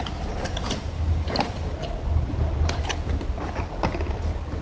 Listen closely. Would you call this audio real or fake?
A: real